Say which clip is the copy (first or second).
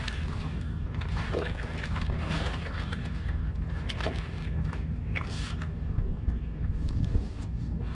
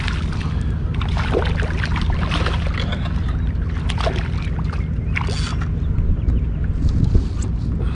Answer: first